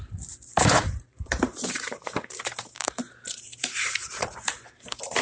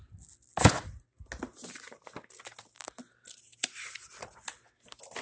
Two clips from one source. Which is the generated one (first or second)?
first